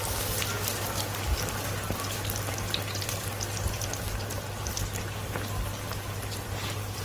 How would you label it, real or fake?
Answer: real